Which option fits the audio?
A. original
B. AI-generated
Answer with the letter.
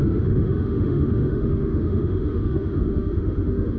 B